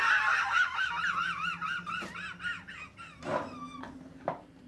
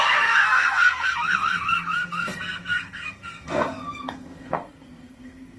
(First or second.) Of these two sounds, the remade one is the second